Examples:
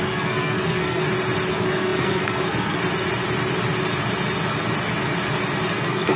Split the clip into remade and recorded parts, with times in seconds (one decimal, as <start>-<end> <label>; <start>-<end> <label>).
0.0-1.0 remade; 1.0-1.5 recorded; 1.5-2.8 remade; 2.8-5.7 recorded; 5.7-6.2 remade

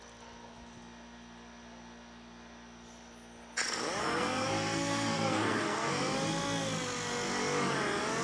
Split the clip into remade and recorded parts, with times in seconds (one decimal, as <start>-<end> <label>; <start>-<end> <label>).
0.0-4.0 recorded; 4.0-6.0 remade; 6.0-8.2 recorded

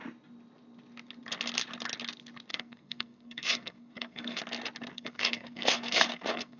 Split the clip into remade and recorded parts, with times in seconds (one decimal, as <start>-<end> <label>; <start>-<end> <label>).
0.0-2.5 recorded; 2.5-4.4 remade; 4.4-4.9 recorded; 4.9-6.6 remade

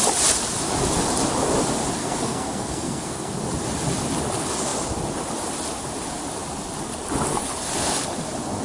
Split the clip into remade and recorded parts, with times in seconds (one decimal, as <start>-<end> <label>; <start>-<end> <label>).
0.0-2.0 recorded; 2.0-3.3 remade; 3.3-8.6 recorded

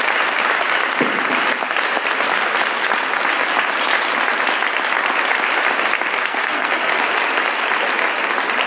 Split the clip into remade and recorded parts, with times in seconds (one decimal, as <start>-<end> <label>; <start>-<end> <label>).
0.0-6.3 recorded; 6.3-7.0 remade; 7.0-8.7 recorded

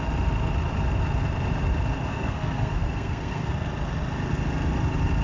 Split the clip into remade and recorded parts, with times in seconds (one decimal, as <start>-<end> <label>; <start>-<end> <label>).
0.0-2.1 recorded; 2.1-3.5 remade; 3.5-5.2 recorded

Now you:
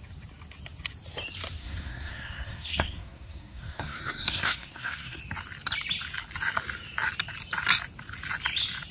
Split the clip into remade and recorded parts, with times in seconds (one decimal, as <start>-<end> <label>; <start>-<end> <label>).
0.0-1.6 recorded; 1.6-5.2 remade; 5.2-8.9 recorded